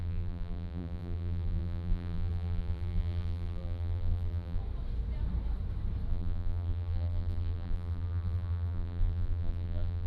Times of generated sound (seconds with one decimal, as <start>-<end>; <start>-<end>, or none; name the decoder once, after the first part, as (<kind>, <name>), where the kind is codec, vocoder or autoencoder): 0.0-4.6 (vocoder, BigVGAN v2); 6.1-10.1